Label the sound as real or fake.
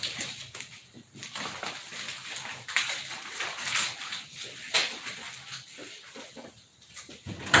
real